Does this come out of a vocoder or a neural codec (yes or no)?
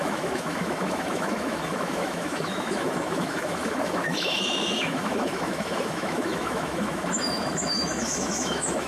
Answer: yes